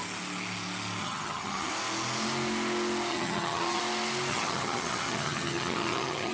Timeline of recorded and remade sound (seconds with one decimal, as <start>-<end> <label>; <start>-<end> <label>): 0.0-1.0 recorded; 1.0-1.7 remade; 1.7-3.1 recorded; 3.1-3.8 remade; 3.8-4.3 recorded; 4.3-6.3 remade